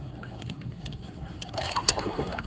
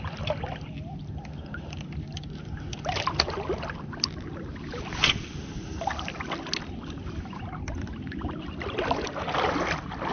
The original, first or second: second